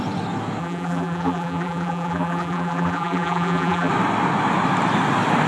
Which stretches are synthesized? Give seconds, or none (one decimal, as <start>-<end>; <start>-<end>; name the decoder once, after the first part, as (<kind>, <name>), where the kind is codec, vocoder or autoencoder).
0.6-3.9 (vocoder, BigVGAN v2)